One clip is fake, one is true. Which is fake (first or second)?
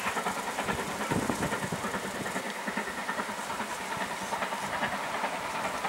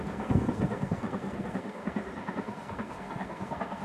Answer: second